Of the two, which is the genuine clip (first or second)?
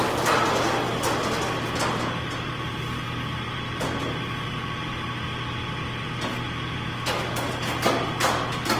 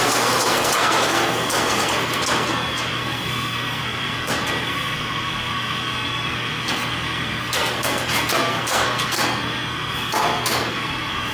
first